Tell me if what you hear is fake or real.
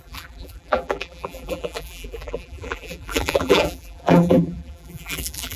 fake